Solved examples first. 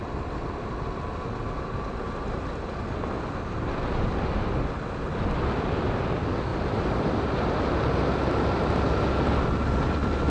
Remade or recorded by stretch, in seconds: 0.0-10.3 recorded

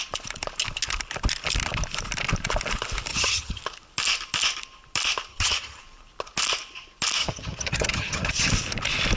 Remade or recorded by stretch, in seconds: 0.0-3.1 recorded; 3.1-3.6 remade; 3.6-5.3 recorded; 5.3-5.8 remade; 5.8-7.2 recorded; 7.2-8.5 remade; 8.5-9.2 recorded